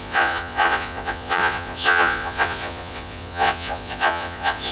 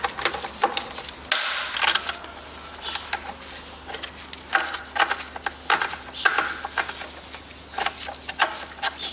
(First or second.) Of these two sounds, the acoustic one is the second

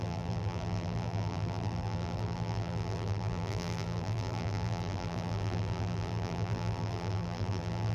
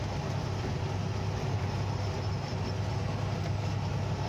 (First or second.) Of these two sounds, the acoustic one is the second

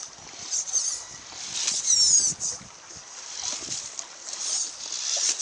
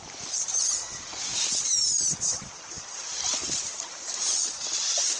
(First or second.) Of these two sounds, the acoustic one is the first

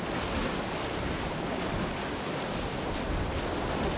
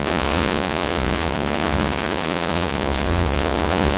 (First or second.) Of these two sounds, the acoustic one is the first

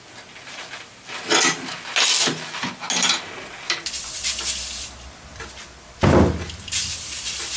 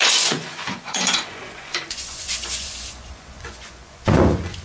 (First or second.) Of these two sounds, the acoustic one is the first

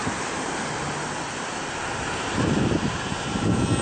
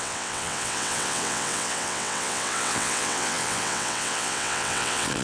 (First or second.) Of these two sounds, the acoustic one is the first